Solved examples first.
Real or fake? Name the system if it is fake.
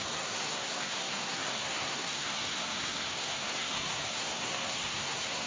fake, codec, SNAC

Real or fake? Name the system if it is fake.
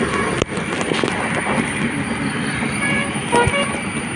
real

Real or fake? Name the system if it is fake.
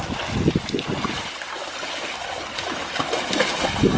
real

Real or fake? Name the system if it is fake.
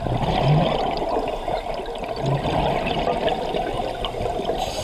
real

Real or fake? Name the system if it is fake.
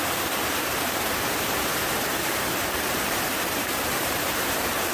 fake, vocoder, BigVGAN v2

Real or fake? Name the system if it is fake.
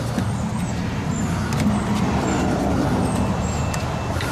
real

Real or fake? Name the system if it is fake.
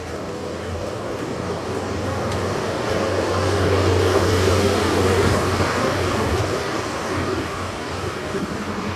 fake, codec, DAC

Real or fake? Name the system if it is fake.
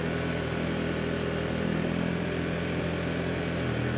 fake, vocoder, BigVGAN v2